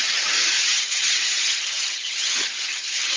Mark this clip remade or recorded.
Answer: remade